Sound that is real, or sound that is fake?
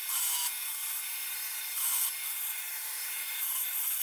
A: fake